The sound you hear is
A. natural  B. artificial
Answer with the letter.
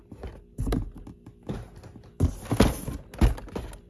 A